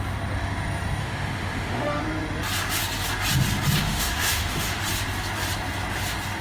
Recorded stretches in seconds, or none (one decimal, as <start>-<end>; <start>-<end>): 0.0-1.0; 2.0-3.8; 4.8-6.4